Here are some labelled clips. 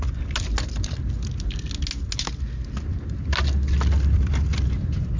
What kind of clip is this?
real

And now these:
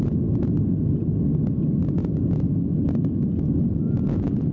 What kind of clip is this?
real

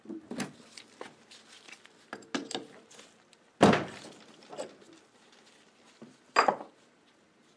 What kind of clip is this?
real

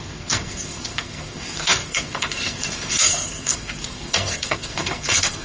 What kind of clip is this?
fake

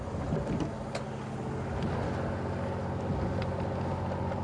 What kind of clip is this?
real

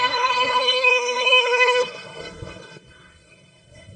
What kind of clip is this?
fake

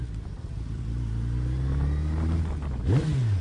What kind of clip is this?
real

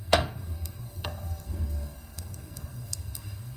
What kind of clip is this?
fake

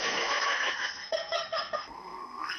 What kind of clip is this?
fake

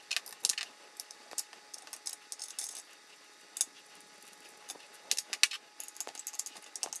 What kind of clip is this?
real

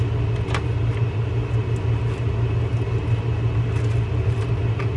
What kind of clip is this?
real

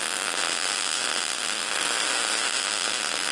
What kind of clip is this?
real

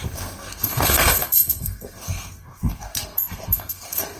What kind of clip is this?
fake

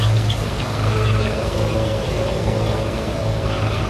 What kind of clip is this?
fake